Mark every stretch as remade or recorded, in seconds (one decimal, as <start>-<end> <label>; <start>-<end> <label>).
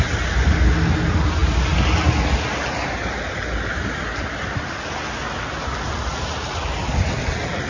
0.0-7.7 recorded